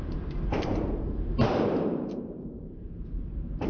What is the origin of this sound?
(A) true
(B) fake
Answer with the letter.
B